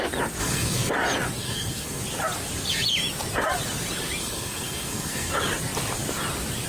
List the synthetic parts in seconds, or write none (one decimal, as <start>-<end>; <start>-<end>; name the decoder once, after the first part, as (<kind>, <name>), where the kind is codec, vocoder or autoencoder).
0.4-0.9 (codec, SNAC); 1.4-2.0; 4.2-5.3